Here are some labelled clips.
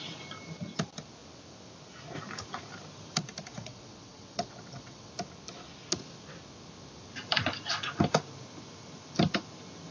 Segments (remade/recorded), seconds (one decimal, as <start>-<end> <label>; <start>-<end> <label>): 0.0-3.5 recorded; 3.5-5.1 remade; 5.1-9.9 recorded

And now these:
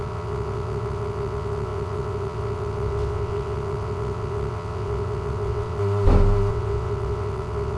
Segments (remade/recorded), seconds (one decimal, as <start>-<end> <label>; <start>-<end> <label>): 0.0-5.8 remade; 5.8-6.5 recorded; 6.5-7.8 remade

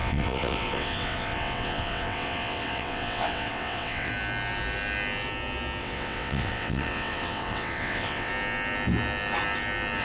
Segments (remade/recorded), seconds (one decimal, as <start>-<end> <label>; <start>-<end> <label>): 0.0-4.1 remade; 4.1-5.8 recorded; 5.8-8.3 remade; 8.3-10.0 recorded